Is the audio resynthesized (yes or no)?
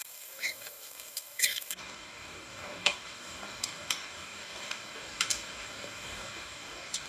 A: yes